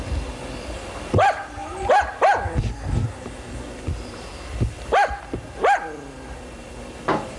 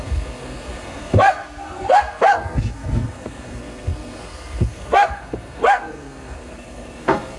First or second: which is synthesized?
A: second